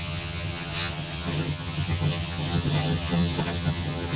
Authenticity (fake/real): fake